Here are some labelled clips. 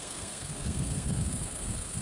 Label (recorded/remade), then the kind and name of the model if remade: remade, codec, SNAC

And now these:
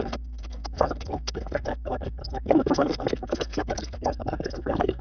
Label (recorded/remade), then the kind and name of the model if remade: remade, codec, SNAC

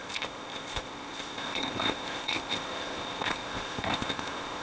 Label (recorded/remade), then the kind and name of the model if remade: remade, codec, ZipCodec